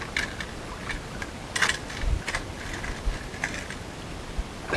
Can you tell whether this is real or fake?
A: real